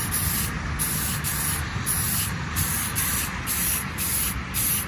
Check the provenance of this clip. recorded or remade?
recorded